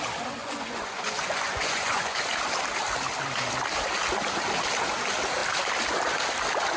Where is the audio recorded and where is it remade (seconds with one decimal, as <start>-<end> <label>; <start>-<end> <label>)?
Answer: 0.0-0.4 recorded; 0.4-2.2 remade; 2.2-6.8 recorded